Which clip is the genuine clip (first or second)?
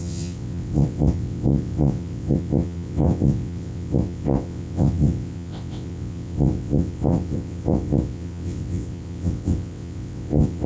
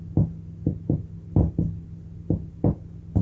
second